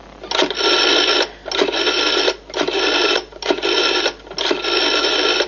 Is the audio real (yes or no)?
yes